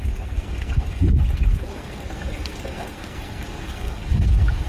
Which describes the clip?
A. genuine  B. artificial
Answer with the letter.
B